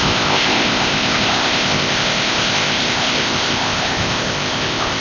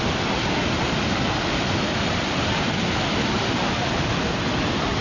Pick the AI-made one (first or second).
first